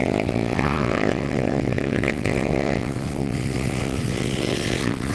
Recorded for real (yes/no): no